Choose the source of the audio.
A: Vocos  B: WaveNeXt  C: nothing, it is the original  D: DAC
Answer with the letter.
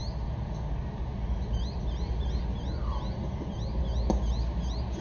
C